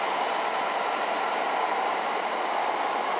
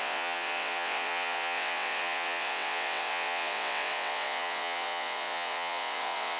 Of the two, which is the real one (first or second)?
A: first